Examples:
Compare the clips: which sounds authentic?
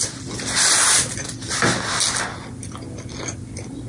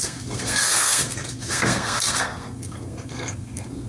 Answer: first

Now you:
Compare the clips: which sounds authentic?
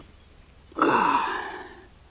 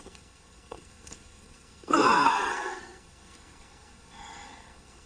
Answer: first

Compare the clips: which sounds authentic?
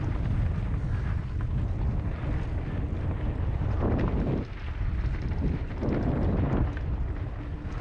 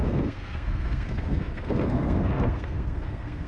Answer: first